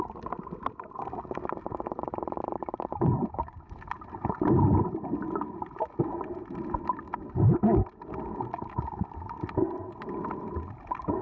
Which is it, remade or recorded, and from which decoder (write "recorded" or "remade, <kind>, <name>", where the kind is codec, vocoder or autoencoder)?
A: recorded